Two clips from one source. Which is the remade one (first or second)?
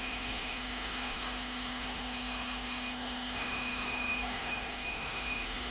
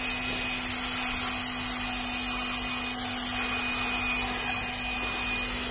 first